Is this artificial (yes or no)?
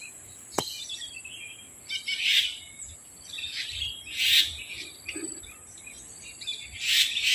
no